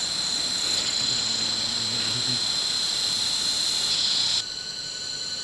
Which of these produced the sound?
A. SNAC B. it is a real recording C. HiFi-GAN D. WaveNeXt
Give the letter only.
B